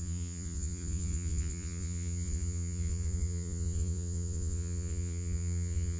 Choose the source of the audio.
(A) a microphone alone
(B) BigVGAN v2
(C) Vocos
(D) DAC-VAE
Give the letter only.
C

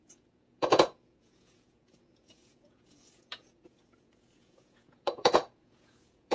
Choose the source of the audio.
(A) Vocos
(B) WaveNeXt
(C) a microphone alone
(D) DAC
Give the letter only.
A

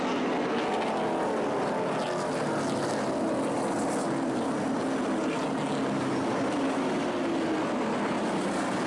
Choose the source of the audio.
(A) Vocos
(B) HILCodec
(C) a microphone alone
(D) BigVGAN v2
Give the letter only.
C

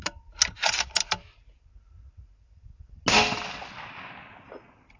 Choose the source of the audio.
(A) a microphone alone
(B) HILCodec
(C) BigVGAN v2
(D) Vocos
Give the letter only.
A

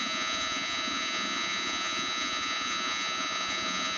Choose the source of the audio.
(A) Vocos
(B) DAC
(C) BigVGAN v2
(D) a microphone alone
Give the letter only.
A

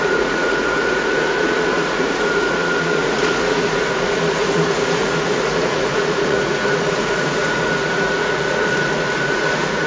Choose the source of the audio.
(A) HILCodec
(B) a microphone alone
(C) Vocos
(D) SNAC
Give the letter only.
C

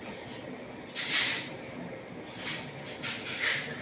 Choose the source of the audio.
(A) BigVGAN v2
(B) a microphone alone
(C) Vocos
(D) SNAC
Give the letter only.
B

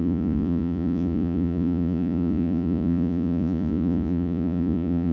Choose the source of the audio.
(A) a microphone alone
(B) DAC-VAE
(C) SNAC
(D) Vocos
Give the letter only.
D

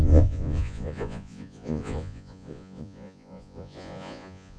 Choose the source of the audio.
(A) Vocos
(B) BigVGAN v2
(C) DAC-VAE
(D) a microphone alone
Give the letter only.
A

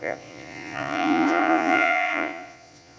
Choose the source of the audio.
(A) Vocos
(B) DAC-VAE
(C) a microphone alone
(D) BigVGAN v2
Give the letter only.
A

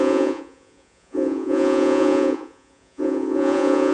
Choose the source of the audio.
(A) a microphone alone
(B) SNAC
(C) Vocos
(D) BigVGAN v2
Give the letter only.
C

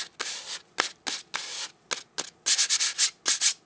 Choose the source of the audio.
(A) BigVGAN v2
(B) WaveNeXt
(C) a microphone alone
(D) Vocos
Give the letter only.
C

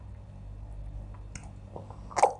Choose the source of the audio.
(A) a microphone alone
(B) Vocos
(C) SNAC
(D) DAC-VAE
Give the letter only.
A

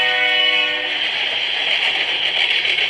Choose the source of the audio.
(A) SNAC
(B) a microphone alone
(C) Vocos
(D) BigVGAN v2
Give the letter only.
B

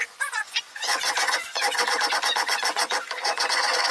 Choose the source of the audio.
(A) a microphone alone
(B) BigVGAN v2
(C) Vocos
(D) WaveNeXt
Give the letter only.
C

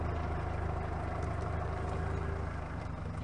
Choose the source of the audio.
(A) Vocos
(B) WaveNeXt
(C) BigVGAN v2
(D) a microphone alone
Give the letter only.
D